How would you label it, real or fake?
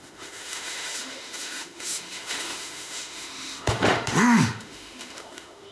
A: fake